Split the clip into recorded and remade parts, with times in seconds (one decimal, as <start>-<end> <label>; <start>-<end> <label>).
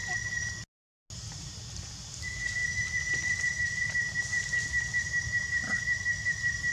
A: 0.0-6.7 recorded